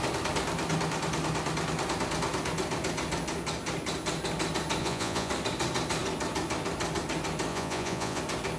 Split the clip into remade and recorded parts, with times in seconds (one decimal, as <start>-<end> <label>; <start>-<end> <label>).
0.0-4.8 recorded; 4.8-5.3 remade; 5.3-7.5 recorded; 7.5-8.2 remade; 8.2-8.6 recorded